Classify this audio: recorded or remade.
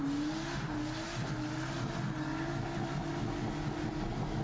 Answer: recorded